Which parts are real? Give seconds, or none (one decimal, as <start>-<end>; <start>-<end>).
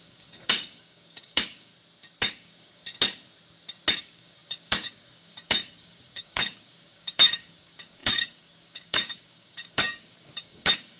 1.7-2.4; 2.8-4.0